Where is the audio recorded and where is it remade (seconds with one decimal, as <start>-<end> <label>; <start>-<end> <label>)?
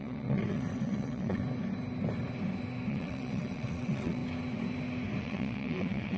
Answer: 0.0-1.4 remade; 1.4-2.9 recorded; 2.9-4.2 remade; 4.2-5.2 recorded; 5.2-6.2 remade